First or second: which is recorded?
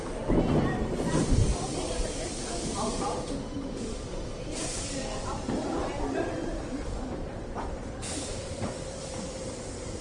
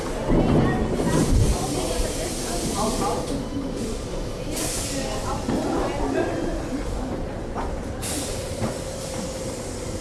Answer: second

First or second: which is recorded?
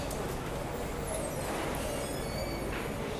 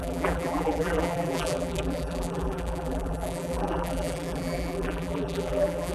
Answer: first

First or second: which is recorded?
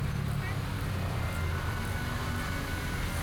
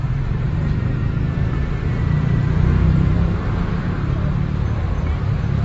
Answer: first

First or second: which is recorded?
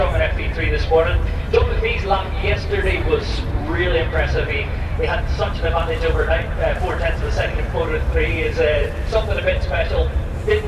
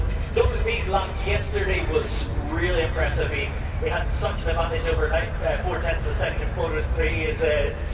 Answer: second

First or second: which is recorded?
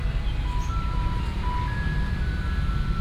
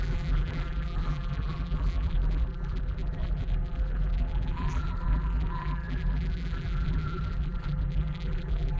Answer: first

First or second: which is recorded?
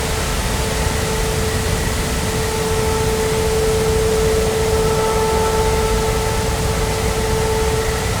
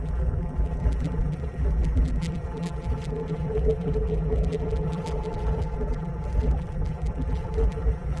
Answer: first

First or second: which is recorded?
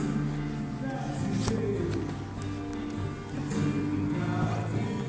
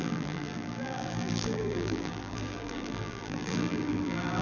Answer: first